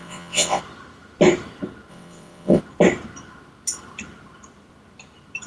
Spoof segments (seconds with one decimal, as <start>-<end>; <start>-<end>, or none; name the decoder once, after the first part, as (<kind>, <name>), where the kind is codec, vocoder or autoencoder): 0.0-0.6 (vocoder, WaveNeXt); 1.9-2.6